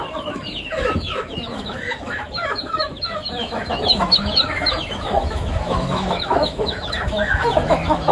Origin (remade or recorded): remade